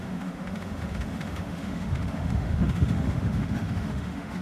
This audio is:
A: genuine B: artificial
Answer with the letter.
B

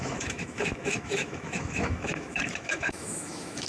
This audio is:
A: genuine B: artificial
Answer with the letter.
B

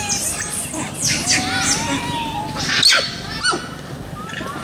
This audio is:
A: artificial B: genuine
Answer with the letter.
B